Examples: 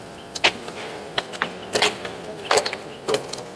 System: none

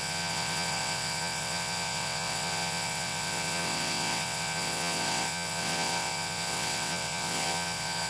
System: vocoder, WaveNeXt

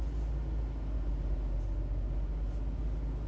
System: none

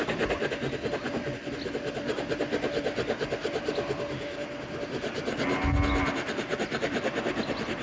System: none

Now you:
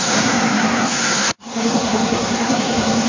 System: codec, SNAC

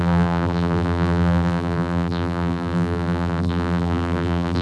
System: vocoder, BigVGAN v2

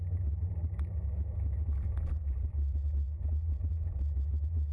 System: none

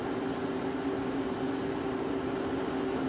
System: none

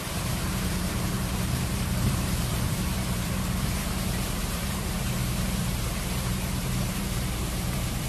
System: vocoder, BigVGAN v2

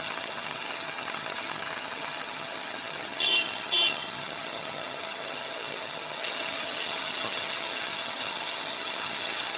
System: vocoder, HiFi-GAN